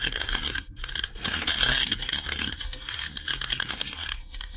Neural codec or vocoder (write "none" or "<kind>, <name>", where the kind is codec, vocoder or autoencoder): codec, SNAC